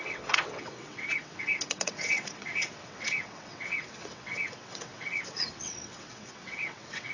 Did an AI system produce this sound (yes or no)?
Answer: yes